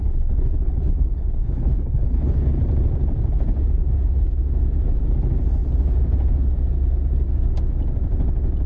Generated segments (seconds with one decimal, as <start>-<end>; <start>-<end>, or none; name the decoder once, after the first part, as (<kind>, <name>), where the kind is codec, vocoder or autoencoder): 0.0-2.6 (codec, HILCodec)